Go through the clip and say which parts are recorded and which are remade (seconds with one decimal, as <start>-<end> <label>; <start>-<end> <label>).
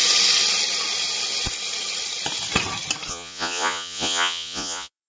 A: 0.0-3.1 recorded; 3.1-5.1 remade